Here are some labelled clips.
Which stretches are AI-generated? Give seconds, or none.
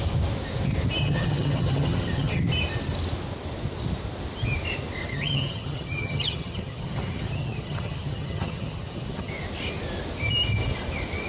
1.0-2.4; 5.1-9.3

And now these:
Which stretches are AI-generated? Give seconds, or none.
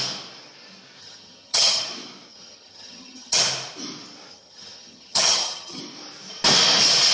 1.0-1.8; 2.3-3.4; 4.3-5.8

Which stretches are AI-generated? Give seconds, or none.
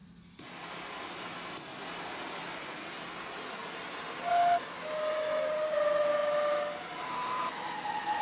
none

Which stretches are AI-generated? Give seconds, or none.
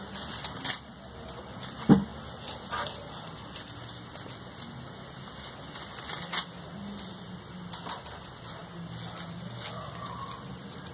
none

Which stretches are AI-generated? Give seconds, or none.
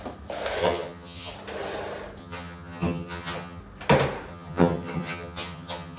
0.6-1.3; 2.2-3.6; 4.3-6.0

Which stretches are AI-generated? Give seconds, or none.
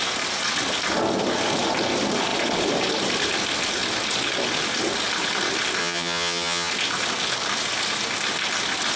5.8-6.7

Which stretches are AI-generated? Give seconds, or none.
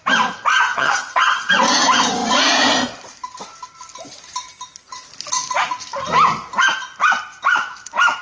0.5-1.5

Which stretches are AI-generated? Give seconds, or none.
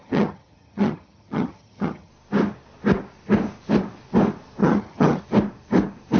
0.0-2.1; 4.6-5.2